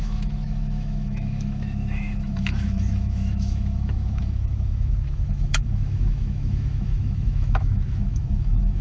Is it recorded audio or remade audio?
remade